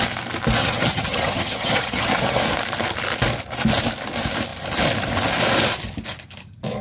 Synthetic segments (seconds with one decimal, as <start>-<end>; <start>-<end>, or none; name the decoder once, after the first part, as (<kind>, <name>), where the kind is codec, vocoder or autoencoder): 0.6-2.4 (vocoder, HiFi-GAN)